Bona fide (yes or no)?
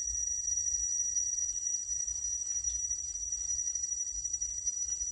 no